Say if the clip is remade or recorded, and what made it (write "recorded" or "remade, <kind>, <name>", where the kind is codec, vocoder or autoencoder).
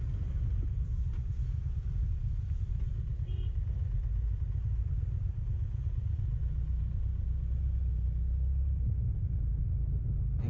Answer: recorded